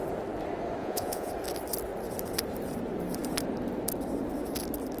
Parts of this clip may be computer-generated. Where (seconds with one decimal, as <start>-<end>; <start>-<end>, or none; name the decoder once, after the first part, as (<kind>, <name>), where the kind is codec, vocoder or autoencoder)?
0.8-1.3 (vocoder, Vocos)